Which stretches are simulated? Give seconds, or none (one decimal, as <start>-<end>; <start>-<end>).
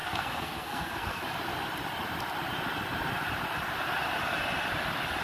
0.0-1.2